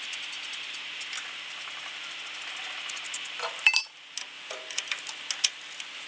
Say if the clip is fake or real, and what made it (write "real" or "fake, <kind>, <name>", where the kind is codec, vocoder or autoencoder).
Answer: real